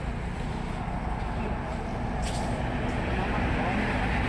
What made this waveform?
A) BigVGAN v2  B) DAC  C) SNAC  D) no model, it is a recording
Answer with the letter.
D